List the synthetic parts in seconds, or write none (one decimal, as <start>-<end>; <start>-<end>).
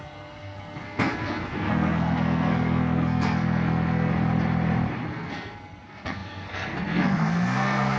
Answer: 0.0-4.1; 5.1-8.0